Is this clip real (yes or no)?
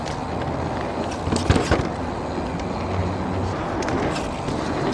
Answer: yes